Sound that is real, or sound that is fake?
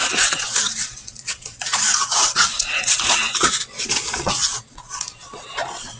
fake